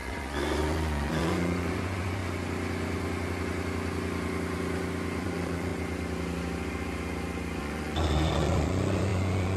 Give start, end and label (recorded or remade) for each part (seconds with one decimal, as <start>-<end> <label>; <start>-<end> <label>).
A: 0.0-2.2 remade; 2.2-5.2 recorded; 5.2-5.7 remade; 5.7-7.6 recorded; 7.6-9.6 remade